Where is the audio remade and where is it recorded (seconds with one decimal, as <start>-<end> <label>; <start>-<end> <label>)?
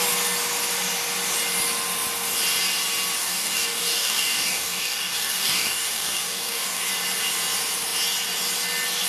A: 0.0-3.2 recorded; 3.2-6.9 remade; 6.9-9.1 recorded